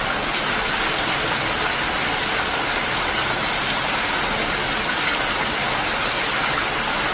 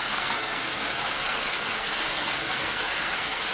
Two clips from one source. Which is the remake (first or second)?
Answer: second